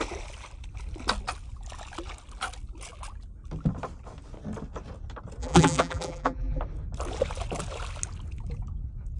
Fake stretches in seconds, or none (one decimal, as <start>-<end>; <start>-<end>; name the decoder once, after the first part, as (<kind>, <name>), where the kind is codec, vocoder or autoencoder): 5.4-6.6 (vocoder, BigVGAN v2)